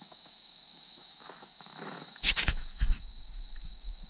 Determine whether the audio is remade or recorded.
remade